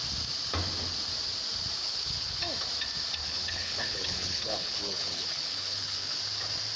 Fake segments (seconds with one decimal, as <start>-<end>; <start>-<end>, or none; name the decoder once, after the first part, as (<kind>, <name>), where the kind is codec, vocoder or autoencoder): 1.8-2.4 (codec, HILCodec); 3.2-6.2